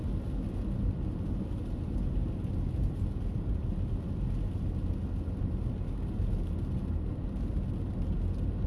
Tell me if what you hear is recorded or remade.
recorded